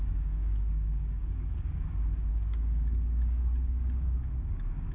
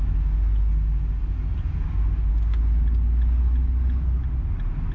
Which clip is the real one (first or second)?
second